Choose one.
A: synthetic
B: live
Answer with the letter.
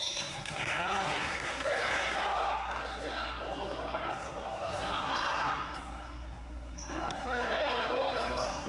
A